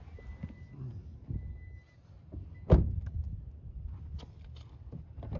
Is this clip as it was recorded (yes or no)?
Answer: yes